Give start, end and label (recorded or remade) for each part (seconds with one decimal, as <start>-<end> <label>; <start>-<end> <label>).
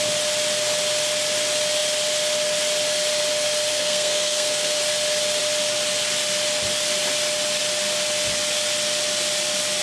0.0-3.7 recorded; 3.7-4.8 remade; 4.8-9.8 recorded